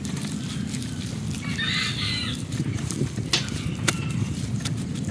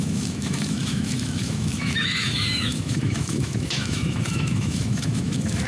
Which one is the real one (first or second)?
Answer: first